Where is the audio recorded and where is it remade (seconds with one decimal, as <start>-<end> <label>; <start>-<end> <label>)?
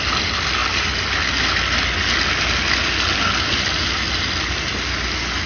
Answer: 0.0-5.5 recorded